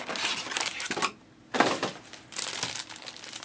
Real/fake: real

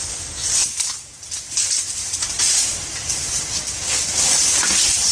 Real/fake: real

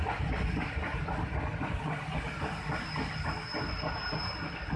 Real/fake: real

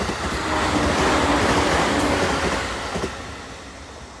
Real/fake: real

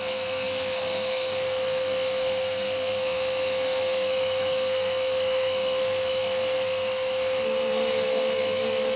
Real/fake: fake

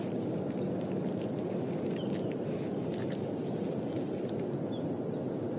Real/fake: real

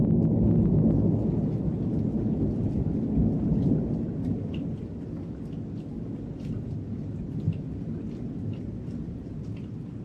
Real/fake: real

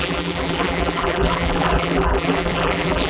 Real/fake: fake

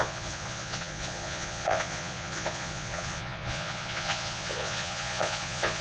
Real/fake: fake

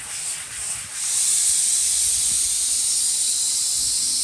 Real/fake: real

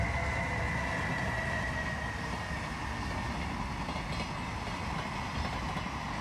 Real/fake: real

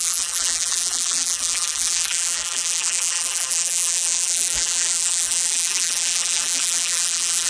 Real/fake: fake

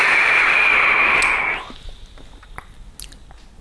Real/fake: real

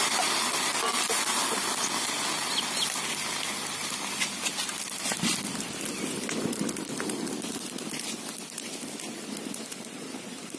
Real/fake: real